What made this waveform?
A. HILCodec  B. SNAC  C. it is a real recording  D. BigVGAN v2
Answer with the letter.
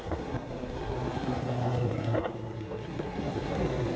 B